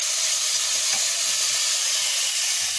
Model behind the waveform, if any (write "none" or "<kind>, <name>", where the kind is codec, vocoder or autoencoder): none